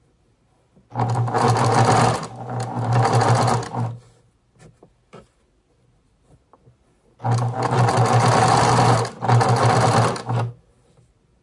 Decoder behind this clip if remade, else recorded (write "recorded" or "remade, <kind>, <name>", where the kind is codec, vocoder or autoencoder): recorded